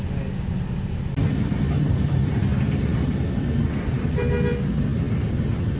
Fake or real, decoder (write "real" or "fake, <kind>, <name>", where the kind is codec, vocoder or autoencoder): real